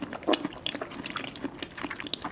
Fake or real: real